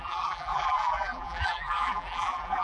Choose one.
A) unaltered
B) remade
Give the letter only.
B